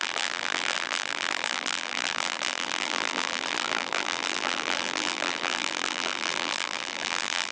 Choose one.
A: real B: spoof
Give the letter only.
B